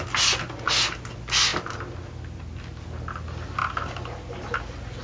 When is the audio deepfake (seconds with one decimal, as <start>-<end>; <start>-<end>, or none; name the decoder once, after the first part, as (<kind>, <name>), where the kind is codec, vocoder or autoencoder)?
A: none